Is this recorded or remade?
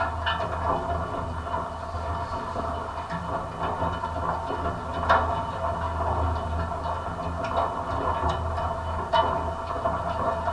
recorded